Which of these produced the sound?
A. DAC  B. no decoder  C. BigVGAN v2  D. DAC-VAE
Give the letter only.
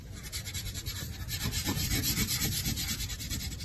C